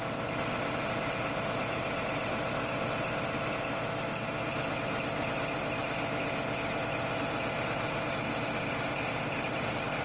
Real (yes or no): yes